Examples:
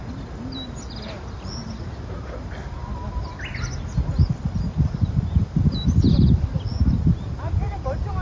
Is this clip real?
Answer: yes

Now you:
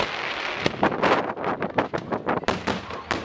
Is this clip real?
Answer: yes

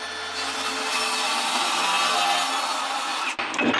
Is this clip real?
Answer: yes